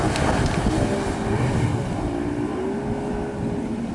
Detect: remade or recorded recorded